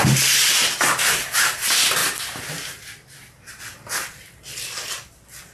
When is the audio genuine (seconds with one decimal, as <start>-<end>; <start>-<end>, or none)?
0.0-5.5